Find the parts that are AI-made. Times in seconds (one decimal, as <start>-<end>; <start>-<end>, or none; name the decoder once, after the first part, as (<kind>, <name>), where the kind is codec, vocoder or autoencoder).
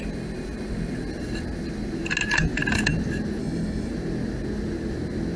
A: 3.4-3.9 (codec, HILCodec)